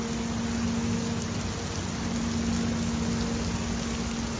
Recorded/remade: recorded